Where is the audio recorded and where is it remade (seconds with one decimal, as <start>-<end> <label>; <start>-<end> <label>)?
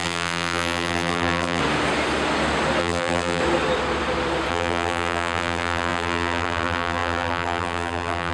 0.0-1.6 remade; 1.6-2.8 recorded; 2.8-3.4 remade; 3.4-4.5 recorded; 4.5-8.3 remade